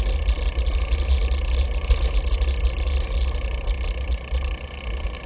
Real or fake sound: real